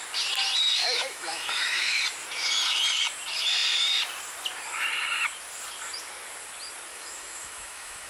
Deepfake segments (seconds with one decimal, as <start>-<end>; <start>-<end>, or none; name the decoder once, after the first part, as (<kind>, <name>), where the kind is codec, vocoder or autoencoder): 0.8-2.0 (autoencoder, DAC-VAE); 6.9-8.1